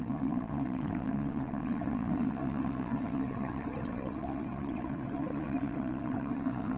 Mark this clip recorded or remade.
remade